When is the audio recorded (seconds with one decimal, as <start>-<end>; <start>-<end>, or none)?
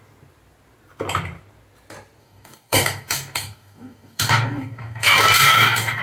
0.0-2.2